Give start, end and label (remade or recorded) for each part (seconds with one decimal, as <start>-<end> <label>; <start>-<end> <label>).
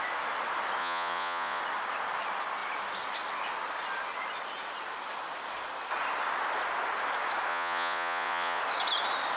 0.0-0.8 recorded; 0.8-1.6 remade; 1.6-7.5 recorded; 7.5-8.6 remade; 8.6-9.4 recorded